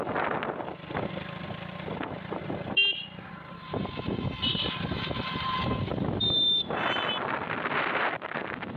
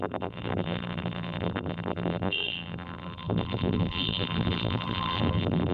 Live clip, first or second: first